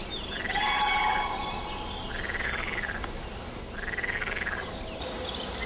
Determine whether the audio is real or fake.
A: real